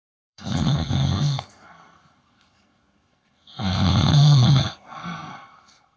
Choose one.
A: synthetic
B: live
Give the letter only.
A